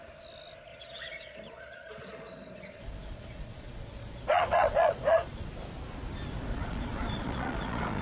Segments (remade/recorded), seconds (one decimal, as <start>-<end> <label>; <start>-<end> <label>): 0.0-0.7 recorded; 0.7-5.5 remade; 5.5-6.5 recorded; 6.5-8.0 remade